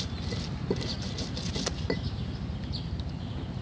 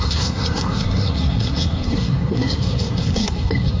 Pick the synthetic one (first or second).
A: second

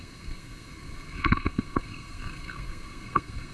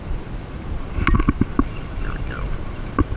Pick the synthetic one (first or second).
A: first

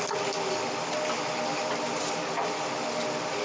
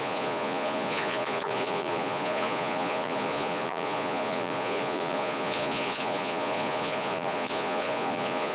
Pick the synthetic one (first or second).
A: second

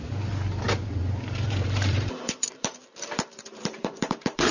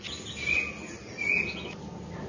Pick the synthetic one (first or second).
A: first